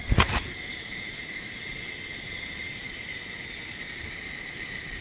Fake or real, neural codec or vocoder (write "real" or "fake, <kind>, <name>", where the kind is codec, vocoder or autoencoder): real